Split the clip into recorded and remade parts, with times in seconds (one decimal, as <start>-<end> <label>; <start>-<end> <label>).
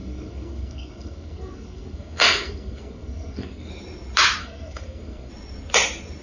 0.0-3.7 remade; 3.7-4.4 recorded; 4.4-5.3 remade; 5.3-6.2 recorded